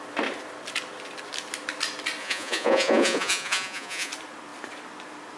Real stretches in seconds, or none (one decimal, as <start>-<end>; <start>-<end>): 0.0-2.2; 4.1-5.4